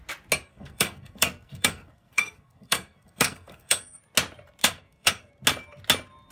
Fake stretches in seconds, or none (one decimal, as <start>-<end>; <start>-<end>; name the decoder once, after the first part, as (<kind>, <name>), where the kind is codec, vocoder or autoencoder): 0.5-4.0 (codec, SNAC); 4.6-5.3